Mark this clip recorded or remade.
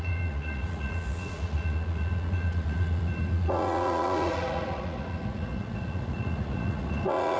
remade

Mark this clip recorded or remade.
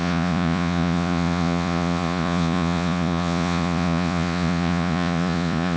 remade